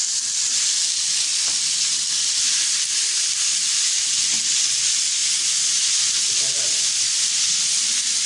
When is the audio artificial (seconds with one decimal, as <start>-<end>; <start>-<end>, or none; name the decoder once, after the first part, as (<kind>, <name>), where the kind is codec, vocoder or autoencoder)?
1.3-3.9 (vocoder, BigVGAN v2)